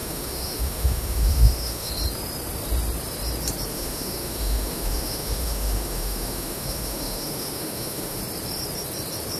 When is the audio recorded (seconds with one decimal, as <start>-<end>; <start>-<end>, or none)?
1.9-3.7; 8.2-9.4